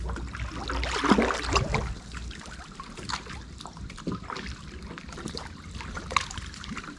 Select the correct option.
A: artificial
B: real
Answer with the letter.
B